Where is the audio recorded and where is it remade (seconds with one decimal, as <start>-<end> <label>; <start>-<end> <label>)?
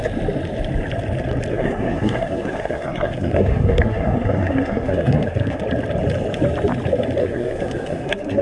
0.0-1.5 recorded; 1.5-5.6 remade; 5.6-7.2 recorded; 7.2-8.4 remade